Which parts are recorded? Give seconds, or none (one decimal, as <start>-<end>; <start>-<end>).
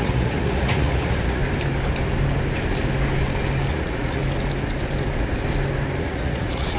1.4-3.7; 4.2-6.0